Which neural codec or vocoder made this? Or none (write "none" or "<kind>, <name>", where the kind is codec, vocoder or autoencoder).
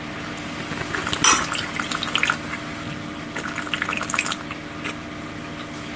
none